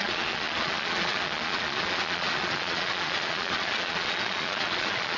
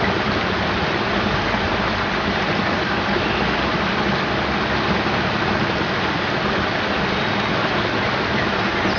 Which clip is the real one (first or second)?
second